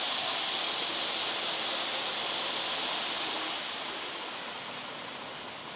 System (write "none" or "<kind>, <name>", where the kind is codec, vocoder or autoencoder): none